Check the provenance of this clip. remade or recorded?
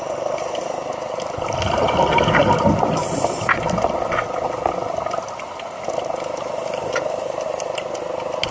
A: recorded